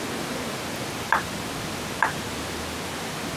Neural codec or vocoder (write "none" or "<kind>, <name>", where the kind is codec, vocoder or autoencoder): none